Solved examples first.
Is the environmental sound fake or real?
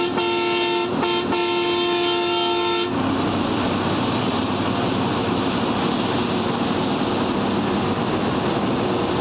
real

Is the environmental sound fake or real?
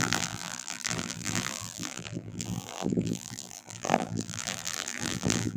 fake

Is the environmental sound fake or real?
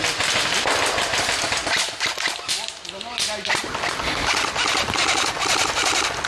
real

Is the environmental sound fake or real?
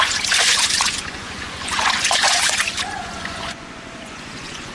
fake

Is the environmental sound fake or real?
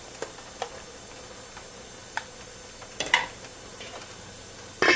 fake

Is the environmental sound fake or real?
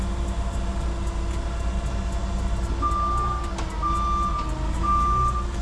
real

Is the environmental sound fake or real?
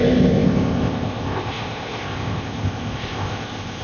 fake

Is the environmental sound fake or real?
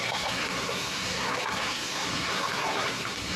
fake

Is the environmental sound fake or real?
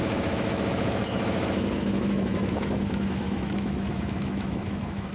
fake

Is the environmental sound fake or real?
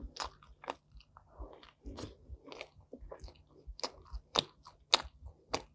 real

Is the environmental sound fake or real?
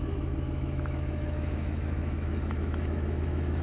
fake